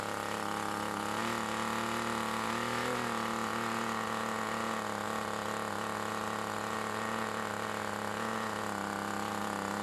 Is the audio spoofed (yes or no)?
no